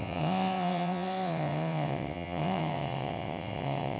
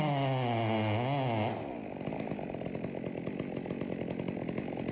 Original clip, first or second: second